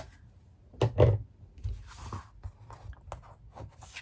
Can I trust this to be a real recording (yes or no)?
yes